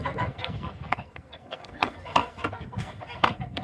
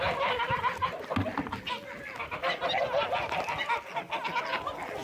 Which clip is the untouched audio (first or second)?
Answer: second